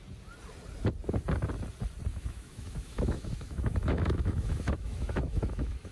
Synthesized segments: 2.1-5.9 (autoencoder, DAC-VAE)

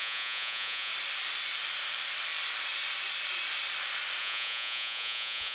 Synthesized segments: 0.0-0.9 (vocoder, Vocos); 4.2-5.5

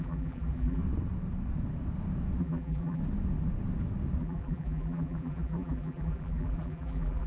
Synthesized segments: 0.0-0.8 (vocoder, BigVGAN v2); 2.4-3.0; 4.2-7.3